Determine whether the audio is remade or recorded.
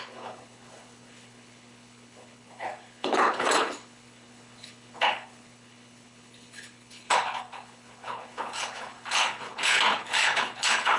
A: remade